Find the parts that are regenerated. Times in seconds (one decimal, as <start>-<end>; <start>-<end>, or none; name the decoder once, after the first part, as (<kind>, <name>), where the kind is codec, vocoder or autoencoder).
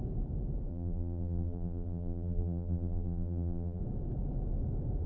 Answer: 0.7-3.8 (vocoder, BigVGAN v2)